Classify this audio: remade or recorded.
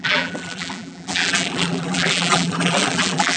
remade